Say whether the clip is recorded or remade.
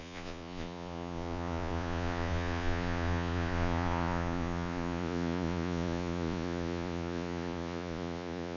remade